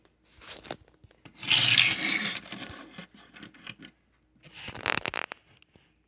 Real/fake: real